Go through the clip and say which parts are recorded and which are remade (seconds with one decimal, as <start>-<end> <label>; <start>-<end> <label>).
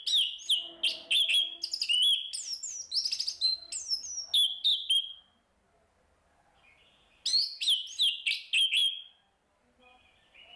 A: 0.0-10.6 recorded